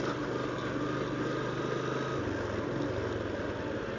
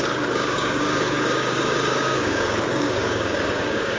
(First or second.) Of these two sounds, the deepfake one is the second